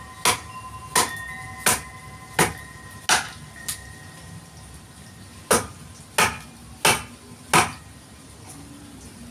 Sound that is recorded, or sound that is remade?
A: recorded